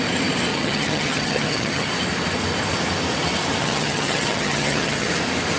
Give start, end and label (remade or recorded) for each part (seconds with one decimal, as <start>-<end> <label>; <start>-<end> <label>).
0.0-0.5 recorded; 0.5-1.9 remade; 1.9-3.6 recorded; 3.6-5.1 remade; 5.1-5.6 recorded